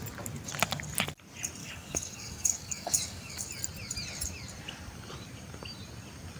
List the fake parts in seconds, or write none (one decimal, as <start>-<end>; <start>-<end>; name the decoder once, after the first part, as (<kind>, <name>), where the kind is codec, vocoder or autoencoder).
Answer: 1.6-3.5 (codec, DAC)